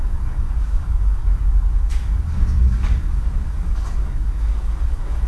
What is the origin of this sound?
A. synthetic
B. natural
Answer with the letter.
A